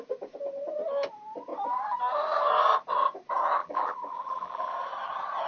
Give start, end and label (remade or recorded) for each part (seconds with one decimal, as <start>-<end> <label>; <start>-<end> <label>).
0.0-3.6 recorded; 3.6-4.7 remade; 4.7-5.5 recorded